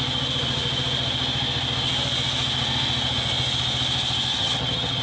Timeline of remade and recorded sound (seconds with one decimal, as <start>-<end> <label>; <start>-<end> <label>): 0.0-4.3 recorded; 4.3-5.0 remade